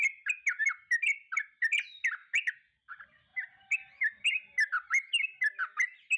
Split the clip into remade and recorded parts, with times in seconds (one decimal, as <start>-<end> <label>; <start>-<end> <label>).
0.0-6.2 recorded